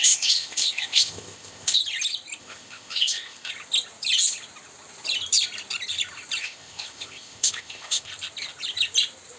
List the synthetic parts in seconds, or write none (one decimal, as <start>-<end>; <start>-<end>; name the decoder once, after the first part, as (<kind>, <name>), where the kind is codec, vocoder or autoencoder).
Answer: 0.0-1.8 (codec, ZipCodec); 2.4-3.5; 6.4-8.1